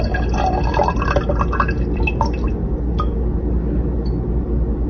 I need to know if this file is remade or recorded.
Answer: recorded